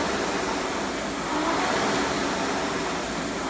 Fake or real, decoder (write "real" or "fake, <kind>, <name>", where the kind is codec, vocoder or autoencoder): real